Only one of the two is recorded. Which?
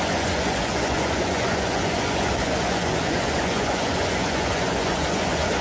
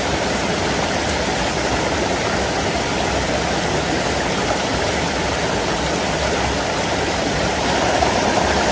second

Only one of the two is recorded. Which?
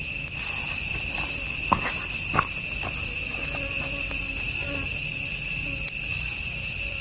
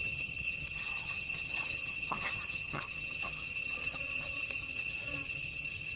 first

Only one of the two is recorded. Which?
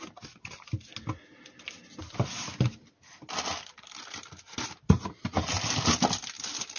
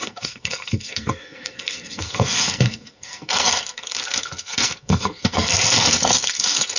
first